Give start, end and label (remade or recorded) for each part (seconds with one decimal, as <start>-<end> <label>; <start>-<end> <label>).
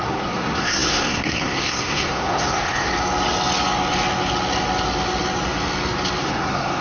0.0-2.9 remade; 2.9-6.2 recorded; 6.2-6.8 remade